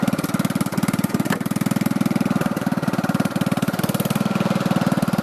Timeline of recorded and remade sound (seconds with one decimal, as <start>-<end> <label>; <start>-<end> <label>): 0.0-0.7 recorded; 0.7-3.8 remade; 3.8-5.2 recorded